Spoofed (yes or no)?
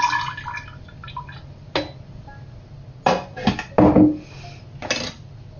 no